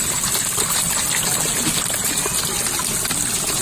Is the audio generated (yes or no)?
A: no